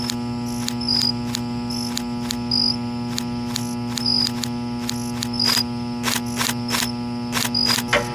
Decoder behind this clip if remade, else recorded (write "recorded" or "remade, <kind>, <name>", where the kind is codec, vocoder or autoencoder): recorded